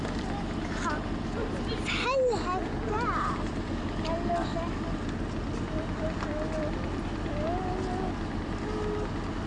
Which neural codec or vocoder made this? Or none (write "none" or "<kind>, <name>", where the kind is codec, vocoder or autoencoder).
none